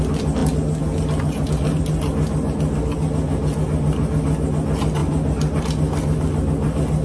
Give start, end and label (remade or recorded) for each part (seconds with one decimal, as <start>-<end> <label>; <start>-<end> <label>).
0.0-7.0 recorded